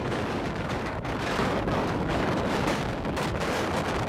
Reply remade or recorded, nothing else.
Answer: remade